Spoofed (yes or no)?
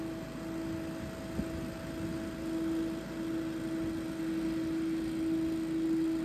no